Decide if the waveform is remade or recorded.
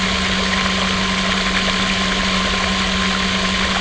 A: recorded